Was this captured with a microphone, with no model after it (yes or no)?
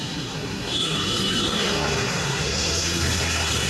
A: no